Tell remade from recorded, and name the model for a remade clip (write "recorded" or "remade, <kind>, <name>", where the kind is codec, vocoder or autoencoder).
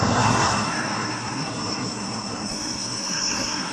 remade, codec, SNAC